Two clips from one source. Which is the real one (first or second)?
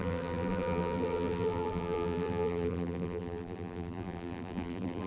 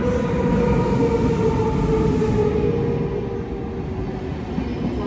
second